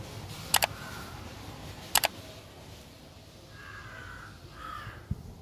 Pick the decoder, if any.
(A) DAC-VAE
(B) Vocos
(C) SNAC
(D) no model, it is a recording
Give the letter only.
D